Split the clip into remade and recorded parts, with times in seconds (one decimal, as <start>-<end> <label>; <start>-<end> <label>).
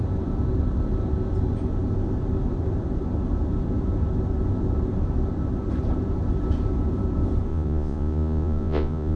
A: 0.0-7.5 recorded; 7.5-9.2 remade